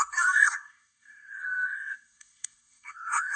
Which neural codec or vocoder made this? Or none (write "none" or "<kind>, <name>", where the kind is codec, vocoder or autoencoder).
codec, SNAC